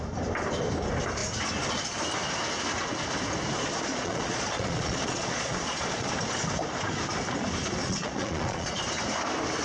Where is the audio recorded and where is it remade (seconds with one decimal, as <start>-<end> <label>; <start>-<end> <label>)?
0.0-3.9 recorded; 3.9-6.1 remade; 6.1-7.8 recorded; 7.8-8.8 remade; 8.8-9.6 recorded